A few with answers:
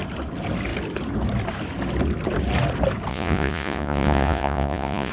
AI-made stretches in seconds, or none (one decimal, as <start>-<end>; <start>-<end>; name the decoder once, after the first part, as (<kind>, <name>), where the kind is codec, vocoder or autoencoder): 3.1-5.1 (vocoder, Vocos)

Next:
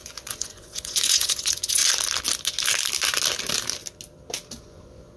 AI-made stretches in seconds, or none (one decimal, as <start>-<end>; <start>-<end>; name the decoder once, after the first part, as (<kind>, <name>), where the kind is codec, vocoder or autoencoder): 0.0-1.8 (vocoder, Vocos); 4.6-5.2

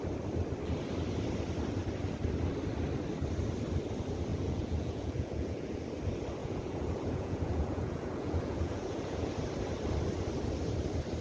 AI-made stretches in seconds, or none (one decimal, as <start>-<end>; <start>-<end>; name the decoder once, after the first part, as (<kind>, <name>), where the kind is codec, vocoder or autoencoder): 4.3-5.8 (vocoder, Vocos); 6.4-9.3